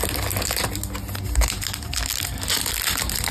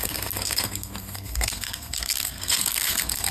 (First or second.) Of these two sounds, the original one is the first